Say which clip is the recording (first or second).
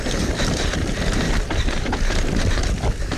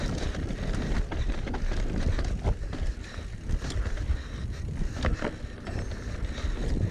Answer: second